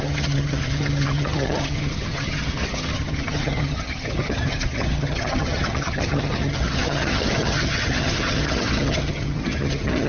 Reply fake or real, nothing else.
fake